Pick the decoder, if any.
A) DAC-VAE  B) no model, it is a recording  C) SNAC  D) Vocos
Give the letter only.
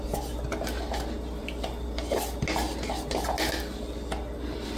B